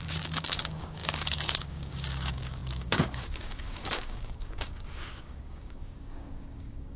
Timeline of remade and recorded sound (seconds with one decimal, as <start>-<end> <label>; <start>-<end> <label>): 0.0-7.0 remade